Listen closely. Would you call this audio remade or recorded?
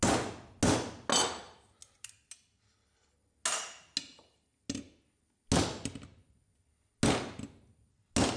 recorded